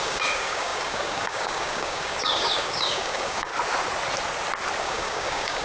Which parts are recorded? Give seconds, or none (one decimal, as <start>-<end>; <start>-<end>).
3.5-4.8